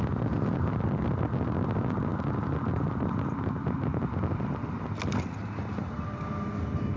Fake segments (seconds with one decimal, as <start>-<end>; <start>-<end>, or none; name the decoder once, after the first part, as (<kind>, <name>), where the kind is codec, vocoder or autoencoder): none